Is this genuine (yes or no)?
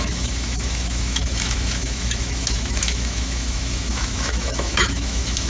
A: no